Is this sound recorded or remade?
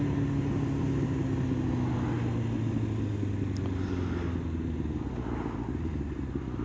recorded